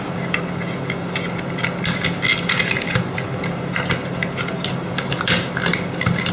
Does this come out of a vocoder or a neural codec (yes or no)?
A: no